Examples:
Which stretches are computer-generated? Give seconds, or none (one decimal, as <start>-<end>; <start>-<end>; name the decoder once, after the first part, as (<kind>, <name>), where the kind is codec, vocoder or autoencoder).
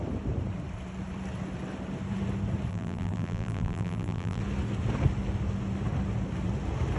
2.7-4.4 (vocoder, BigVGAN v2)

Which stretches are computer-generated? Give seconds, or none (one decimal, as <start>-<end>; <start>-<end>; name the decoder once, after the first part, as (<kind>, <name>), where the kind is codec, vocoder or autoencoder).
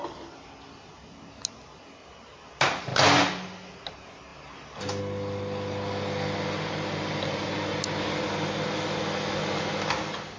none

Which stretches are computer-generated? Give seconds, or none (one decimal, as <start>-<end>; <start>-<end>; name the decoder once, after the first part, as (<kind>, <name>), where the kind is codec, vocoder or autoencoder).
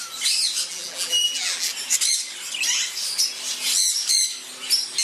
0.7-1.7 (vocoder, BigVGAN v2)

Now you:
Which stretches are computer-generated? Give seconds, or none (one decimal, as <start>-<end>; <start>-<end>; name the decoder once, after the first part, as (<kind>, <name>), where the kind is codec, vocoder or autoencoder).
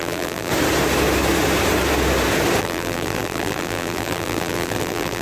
0.0-0.5 (vocoder, BigVGAN v2); 2.6-5.2